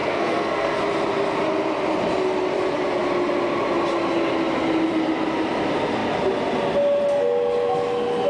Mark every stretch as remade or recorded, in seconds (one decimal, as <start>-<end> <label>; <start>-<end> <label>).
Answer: 0.0-0.8 remade; 0.8-8.3 recorded